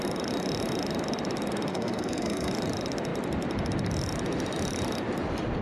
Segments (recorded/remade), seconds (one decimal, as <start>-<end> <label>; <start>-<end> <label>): 0.0-1.7 recorded; 1.7-2.5 remade; 2.5-5.6 recorded